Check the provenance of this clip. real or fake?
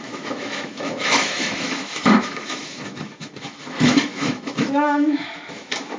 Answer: fake